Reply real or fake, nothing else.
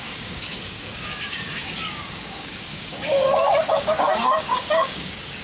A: fake